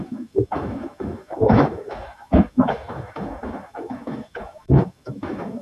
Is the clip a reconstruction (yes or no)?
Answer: yes